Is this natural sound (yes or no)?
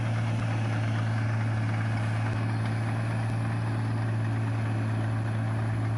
yes